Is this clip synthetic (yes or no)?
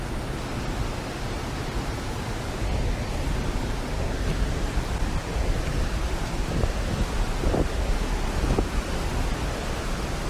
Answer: no